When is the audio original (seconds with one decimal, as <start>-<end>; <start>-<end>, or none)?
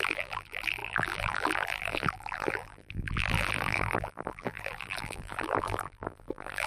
none